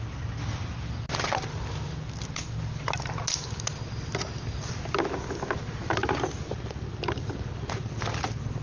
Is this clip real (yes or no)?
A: yes